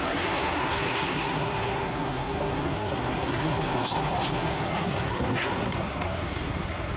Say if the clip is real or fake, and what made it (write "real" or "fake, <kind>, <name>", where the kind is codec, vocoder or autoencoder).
fake, codec, SNAC